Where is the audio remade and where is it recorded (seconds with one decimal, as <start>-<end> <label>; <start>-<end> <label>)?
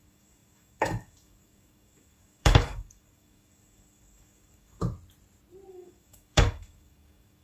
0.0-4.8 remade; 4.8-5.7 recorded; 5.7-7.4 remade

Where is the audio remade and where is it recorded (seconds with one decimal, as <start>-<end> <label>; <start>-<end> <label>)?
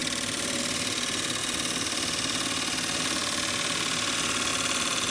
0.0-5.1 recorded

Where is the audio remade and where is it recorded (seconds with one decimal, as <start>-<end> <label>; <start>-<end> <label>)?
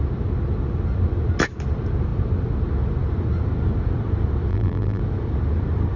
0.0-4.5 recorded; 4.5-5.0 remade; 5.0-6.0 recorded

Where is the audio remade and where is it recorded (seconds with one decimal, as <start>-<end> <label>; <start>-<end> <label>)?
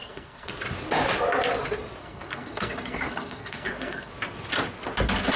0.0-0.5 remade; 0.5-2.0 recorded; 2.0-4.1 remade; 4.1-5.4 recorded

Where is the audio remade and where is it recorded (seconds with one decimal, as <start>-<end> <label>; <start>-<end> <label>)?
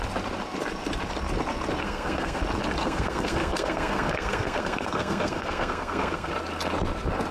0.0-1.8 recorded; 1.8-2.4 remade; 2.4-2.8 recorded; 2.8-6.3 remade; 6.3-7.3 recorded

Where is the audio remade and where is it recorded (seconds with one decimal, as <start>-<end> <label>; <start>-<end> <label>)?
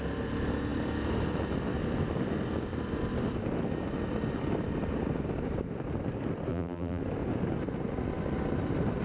0.0-6.5 recorded; 6.5-7.0 remade; 7.0-9.0 recorded